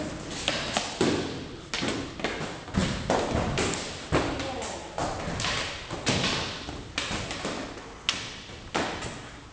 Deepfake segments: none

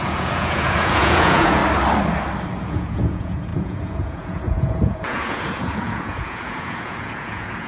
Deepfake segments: 0.0-1.6 (vocoder, Vocos); 2.6-7.7

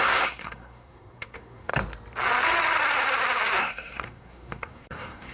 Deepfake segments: 0.0-1.7 (codec, SNAC); 3.6-5.3